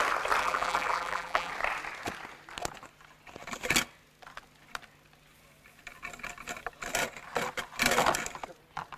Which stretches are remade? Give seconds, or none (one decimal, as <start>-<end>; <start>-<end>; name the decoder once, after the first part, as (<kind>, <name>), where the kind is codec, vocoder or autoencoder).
0.4-1.5 (vocoder, BigVGAN v2)